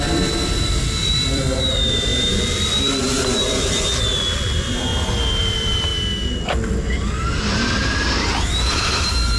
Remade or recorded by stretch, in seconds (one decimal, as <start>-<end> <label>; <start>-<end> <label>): 0.0-4.9 remade; 4.9-5.4 recorded; 5.4-5.9 remade; 5.9-8.7 recorded; 8.7-9.4 remade